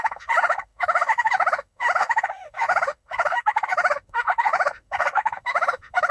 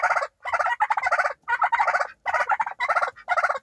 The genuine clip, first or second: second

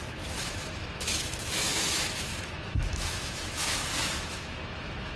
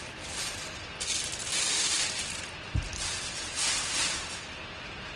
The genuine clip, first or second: second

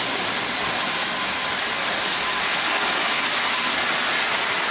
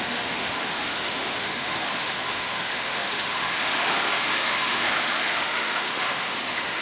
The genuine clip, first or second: first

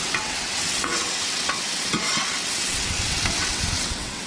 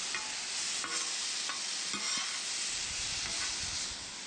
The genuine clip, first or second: second